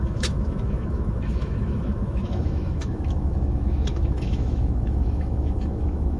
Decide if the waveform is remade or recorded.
remade